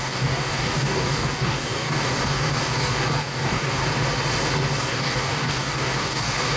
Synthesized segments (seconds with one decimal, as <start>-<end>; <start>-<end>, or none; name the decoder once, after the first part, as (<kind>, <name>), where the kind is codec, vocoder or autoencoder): 0.0-3.8 (codec, DAC); 4.8-6.6